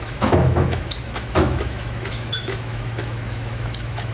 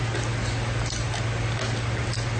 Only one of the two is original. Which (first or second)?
second